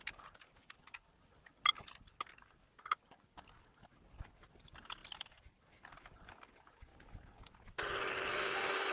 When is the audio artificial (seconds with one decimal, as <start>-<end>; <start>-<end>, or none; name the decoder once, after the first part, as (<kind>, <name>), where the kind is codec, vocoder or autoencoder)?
5.0-5.7 (vocoder, BigVGAN v2); 6.9-8.1

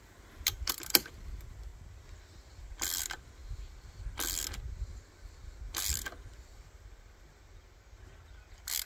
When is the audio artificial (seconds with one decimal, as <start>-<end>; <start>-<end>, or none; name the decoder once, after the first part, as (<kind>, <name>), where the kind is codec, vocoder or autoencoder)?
none

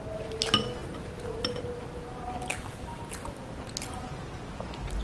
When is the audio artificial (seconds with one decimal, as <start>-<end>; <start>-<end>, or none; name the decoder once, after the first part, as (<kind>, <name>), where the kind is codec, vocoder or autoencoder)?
2.5-3.0 (codec, DAC)